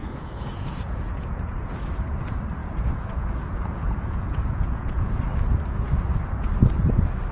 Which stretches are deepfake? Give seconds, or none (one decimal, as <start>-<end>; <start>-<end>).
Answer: 0.0-1.7; 2.6-5.2